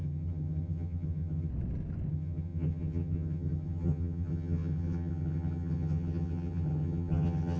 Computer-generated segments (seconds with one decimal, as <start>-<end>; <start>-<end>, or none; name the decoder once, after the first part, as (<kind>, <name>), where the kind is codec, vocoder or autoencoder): 0.0-1.5 (vocoder, HiFi-GAN); 2.1-7.6

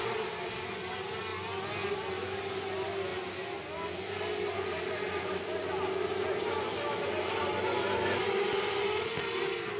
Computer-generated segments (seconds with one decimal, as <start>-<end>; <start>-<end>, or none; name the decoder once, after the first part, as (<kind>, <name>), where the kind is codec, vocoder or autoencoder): none

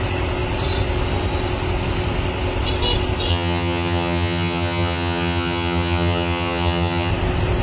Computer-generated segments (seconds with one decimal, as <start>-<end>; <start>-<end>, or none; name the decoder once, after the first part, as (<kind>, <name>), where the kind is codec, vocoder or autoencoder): 3.3-7.1 (vocoder, HiFi-GAN)

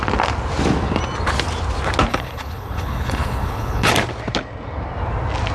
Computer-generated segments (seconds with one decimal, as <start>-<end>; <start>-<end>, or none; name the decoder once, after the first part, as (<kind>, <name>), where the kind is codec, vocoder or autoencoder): 2.1-3.9 (codec, HILCodec)